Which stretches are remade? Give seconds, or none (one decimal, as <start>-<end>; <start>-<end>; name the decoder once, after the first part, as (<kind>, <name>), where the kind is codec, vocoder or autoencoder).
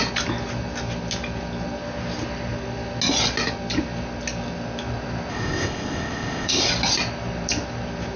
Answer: 5.3-6.7 (codec, ZipCodec)